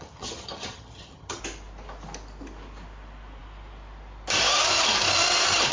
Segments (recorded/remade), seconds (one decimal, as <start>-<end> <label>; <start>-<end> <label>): 0.0-1.4 remade; 1.4-5.7 recorded

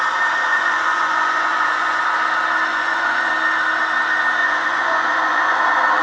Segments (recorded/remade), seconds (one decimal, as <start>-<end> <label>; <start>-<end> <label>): 0.0-0.5 recorded; 0.5-2.0 remade; 2.0-2.7 recorded; 2.7-3.3 remade; 3.3-4.4 recorded; 4.4-5.6 remade; 5.6-6.0 recorded

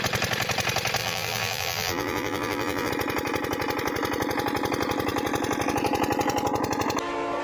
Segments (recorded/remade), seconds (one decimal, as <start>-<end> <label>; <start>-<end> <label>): 0.0-1.0 recorded; 1.0-2.9 remade; 2.9-7.4 recorded

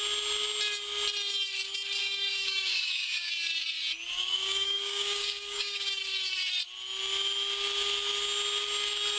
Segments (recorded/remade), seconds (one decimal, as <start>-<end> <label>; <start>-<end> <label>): 0.0-2.0 recorded; 2.0-3.3 remade; 3.3-4.1 recorded; 4.1-6.0 remade; 6.0-9.2 recorded

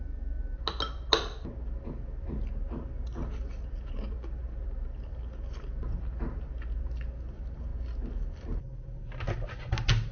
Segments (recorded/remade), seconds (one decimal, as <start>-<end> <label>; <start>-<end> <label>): 0.0-10.1 recorded